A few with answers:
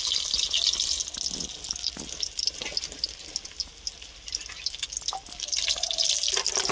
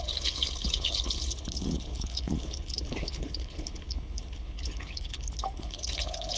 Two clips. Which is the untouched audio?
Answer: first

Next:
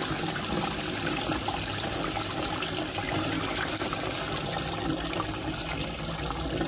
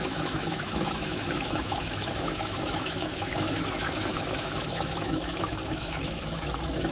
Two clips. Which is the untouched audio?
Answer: first